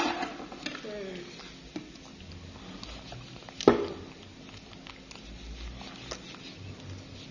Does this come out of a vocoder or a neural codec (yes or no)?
no